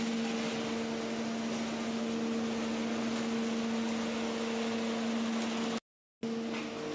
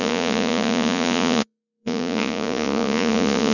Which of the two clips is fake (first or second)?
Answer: second